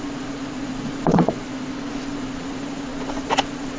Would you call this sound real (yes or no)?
no